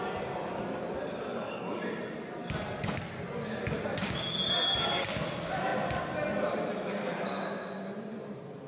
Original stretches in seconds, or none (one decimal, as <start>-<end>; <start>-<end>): 0.0-1.3; 1.8-8.7